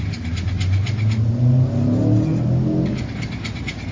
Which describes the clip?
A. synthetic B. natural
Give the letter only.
B